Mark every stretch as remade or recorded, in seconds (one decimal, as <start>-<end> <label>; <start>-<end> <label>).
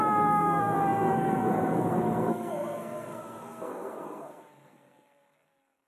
0.0-5.9 remade